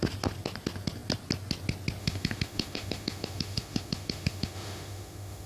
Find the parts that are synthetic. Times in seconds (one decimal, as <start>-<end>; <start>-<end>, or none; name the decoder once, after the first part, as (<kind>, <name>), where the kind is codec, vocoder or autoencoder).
2.0-5.5 (autoencoder, DAC-VAE)